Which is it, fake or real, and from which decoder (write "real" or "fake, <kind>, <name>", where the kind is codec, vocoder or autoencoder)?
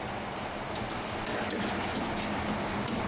real